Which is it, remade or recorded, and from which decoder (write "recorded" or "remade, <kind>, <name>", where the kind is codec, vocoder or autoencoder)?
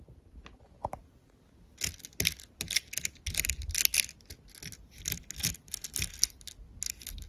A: recorded